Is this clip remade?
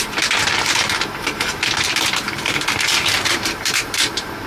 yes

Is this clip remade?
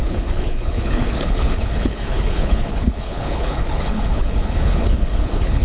yes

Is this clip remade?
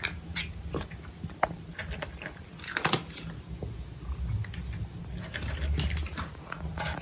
no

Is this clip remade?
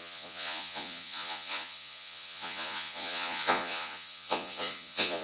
yes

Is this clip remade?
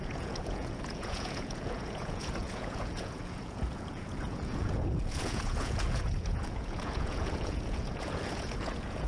yes